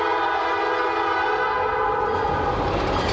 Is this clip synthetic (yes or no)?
no